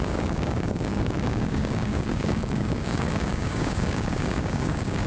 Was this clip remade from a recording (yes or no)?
yes